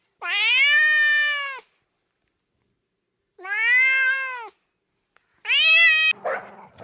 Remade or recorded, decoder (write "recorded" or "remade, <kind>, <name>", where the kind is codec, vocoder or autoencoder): recorded